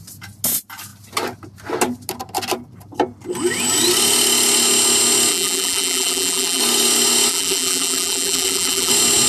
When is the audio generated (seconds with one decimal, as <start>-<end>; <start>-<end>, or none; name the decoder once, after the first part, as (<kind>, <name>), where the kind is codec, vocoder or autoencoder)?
5.3-6.6 (vocoder, BigVGAN v2); 7.3-8.9